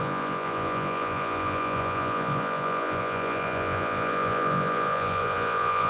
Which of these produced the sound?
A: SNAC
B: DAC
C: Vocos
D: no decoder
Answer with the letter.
C